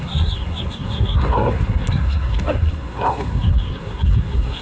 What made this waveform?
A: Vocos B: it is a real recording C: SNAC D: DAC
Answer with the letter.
C